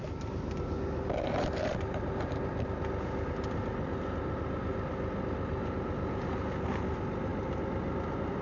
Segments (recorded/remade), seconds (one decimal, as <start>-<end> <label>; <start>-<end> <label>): 0.0-8.4 recorded